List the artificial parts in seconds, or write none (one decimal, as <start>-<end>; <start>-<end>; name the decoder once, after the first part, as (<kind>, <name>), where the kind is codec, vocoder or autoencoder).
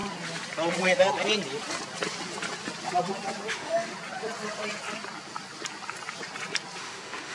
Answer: 3.5-3.9 (autoencoder, DAC-VAE); 6.8-7.3